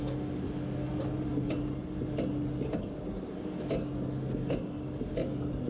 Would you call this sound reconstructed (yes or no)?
no